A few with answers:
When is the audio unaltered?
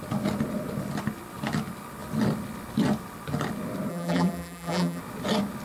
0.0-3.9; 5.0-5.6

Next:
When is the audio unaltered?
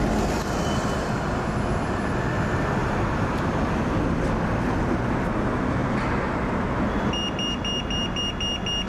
0.0-2.8; 3.7-8.9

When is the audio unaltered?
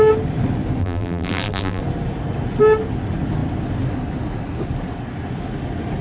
0.0-0.8; 1.8-6.0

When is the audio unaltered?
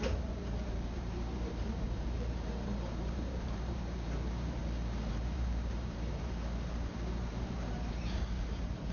4.6-5.1